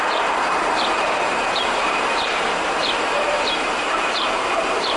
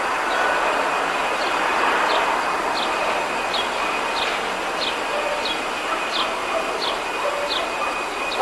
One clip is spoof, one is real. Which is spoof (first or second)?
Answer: first